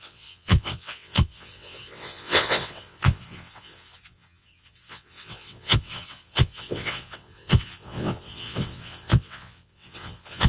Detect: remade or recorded remade